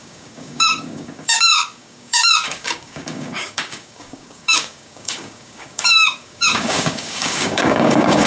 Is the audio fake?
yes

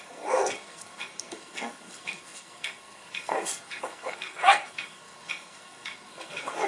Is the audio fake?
yes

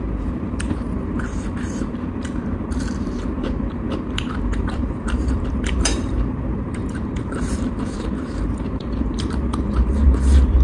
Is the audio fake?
yes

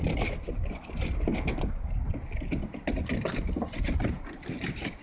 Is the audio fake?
no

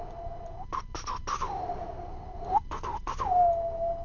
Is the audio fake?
no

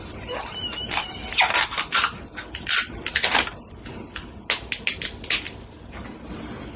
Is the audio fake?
no